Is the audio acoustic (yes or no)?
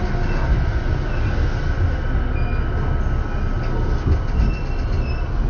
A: yes